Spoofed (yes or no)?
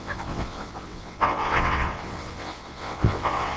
yes